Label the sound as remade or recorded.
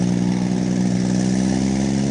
recorded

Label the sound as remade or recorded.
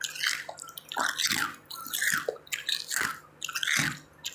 recorded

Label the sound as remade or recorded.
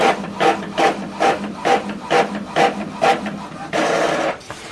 recorded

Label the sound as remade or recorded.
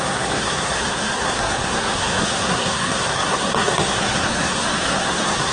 remade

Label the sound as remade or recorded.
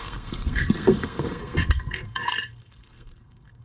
remade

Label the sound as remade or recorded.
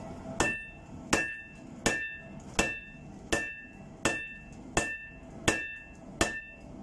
recorded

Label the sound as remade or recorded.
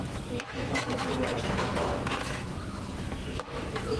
remade